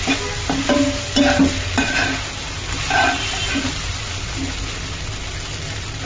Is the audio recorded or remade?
recorded